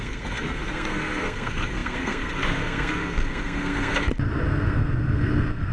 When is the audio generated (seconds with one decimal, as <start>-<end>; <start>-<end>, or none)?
0.0-3.9; 4.4-5.7